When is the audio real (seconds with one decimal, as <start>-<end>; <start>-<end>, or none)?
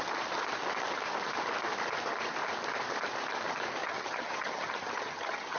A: 0.0-3.8